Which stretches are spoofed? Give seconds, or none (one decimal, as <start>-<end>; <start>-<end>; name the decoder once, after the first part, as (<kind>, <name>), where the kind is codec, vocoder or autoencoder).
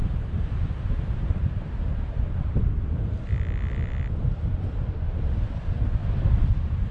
0.0-6.0 (vocoder, BigVGAN v2); 6.5-6.9